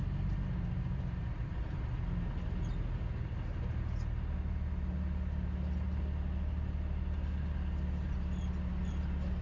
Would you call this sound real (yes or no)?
yes